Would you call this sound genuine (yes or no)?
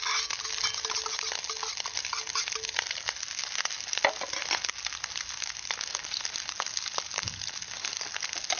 yes